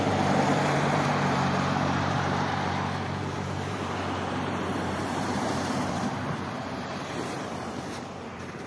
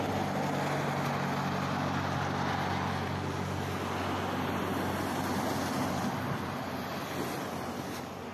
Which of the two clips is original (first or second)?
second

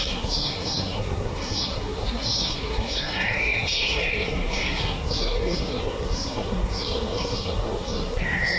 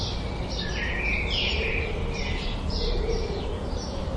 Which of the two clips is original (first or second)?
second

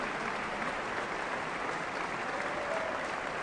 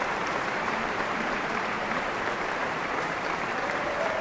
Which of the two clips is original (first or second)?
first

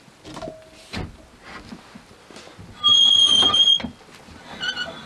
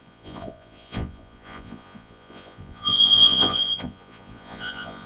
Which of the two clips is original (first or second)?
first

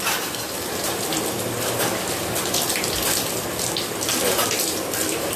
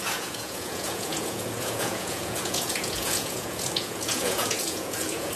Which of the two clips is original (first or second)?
first